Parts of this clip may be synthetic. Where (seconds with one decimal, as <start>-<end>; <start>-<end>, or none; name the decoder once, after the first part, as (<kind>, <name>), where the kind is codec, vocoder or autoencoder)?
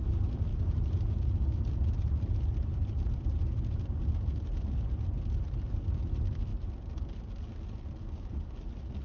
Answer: 2.7-3.6 (vocoder, BigVGAN v2); 6.5-8.1